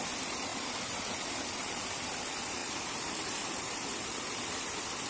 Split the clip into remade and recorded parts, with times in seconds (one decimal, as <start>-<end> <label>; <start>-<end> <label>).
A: 0.0-0.5 recorded; 0.5-1.9 remade; 1.9-2.6 recorded; 2.6-4.2 remade; 4.2-5.1 recorded